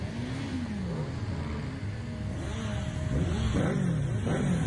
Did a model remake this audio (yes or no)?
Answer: no